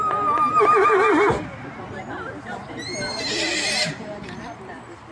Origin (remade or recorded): remade